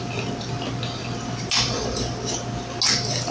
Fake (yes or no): no